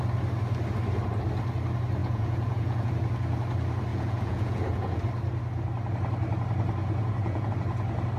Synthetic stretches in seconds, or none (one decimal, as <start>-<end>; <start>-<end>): 2.0-2.9; 3.9-5.0; 6.8-7.5